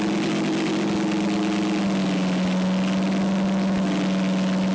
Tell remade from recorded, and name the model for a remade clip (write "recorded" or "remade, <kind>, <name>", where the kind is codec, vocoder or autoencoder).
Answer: recorded